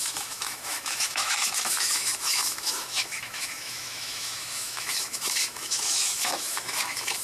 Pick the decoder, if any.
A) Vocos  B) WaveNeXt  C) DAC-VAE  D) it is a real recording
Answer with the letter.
C